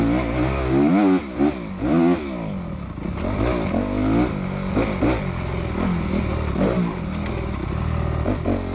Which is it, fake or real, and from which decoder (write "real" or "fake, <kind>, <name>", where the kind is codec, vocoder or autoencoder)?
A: real